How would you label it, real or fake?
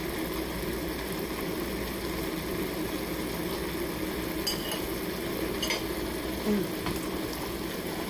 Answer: real